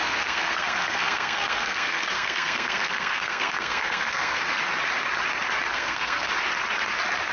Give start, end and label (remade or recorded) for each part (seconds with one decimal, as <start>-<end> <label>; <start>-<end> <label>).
0.0-4.4 remade; 4.4-5.7 recorded; 5.7-6.3 remade; 6.3-7.3 recorded